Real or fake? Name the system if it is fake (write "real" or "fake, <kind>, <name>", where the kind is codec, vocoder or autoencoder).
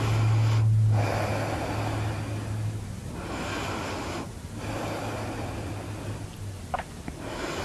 real